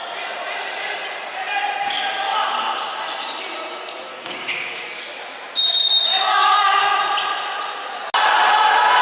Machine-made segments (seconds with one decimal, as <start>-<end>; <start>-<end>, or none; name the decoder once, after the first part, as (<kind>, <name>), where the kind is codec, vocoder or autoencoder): 4.1-4.9 (codec, DAC); 6.3-7.0